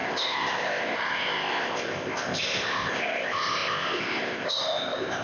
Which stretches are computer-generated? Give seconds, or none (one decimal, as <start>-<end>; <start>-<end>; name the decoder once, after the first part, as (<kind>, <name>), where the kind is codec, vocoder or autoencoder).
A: 0.0-5.2 (codec, ZipCodec)